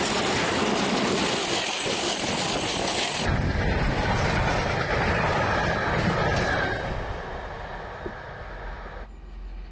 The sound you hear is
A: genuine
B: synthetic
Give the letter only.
A